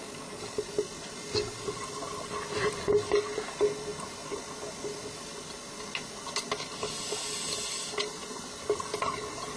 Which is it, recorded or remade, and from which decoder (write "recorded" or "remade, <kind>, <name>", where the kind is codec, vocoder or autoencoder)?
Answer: recorded